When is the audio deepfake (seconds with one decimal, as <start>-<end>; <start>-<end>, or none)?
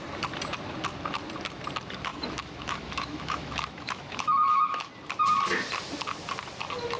2.1-4.9